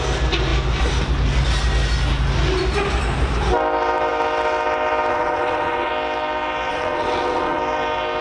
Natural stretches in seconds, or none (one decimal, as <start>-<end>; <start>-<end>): 0.0-5.1; 5.9-6.7; 7.6-8.2